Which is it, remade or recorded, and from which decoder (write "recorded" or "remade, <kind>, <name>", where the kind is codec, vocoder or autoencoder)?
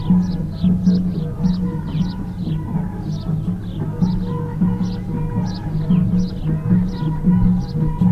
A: recorded